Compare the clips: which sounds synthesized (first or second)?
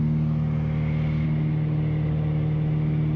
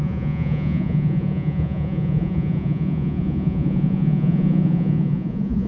second